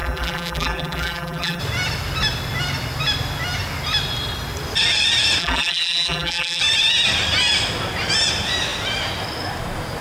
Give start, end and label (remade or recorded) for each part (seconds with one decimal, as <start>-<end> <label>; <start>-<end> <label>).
0.0-1.6 remade; 1.6-5.4 recorded; 5.4-6.6 remade; 6.6-10.0 recorded